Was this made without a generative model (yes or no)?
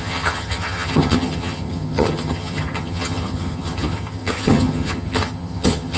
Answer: no